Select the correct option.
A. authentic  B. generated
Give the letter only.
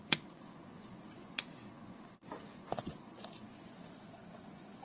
B